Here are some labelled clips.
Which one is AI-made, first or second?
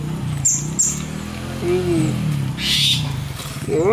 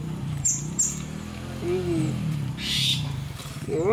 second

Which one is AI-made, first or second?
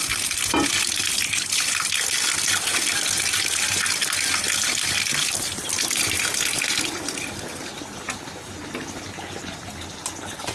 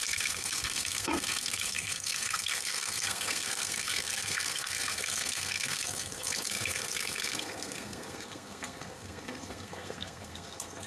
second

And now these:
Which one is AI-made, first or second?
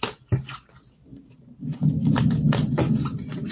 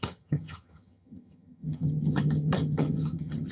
second